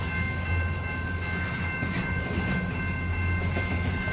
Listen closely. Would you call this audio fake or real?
real